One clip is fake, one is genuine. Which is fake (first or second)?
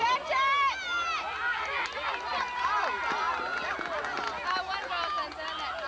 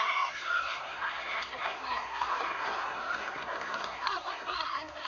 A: second